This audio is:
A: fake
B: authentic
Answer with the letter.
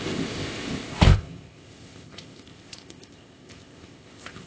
A